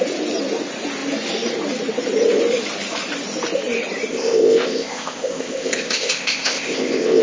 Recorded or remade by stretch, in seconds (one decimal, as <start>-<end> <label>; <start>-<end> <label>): 0.0-4.1 recorded; 4.1-7.2 remade